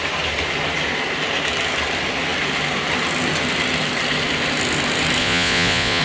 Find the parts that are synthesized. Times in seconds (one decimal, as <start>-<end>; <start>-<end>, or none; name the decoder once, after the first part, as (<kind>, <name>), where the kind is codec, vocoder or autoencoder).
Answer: 5.2-6.0 (vocoder, Vocos)